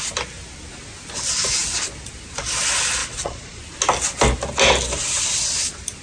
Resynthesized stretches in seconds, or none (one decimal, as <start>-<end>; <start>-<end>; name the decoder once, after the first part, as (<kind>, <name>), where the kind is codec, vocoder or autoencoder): 3.0-3.6 (vocoder, Vocos)